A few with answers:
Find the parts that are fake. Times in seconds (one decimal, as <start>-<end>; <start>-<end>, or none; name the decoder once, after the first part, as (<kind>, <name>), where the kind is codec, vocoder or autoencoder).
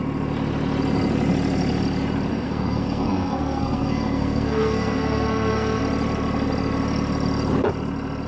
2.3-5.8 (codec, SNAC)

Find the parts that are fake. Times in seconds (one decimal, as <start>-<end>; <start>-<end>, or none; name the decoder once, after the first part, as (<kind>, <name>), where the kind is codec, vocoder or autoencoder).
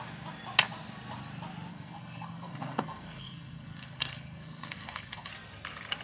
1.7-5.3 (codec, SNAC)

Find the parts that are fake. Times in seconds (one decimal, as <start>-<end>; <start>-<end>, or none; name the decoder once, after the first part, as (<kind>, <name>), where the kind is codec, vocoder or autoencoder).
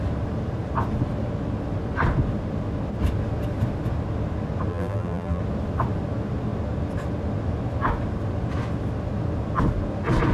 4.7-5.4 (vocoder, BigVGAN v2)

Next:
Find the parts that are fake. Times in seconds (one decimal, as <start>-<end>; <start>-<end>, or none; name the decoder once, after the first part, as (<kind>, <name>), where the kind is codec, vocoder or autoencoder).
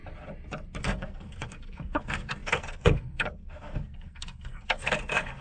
0.8-5.4 (codec, SNAC)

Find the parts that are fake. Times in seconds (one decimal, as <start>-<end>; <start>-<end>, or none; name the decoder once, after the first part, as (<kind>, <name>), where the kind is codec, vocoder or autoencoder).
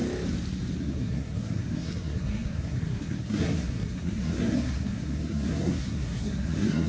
0.8-6.9 (codec, SNAC)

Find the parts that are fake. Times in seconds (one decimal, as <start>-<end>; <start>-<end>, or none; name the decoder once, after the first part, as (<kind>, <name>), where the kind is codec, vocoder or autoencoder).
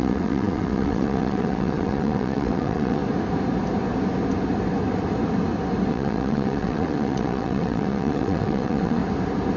0.0-3.0 (vocoder, WaveNeXt); 5.9-9.0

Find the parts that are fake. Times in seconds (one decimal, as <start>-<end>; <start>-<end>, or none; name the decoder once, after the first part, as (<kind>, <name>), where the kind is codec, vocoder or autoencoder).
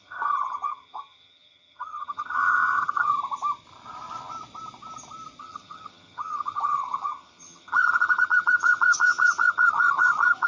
0.0-3.1 (vocoder, HiFi-GAN); 5.4-10.5